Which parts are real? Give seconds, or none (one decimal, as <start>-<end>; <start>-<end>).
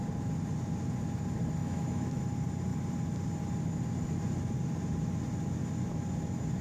0.0-1.6; 2.2-6.6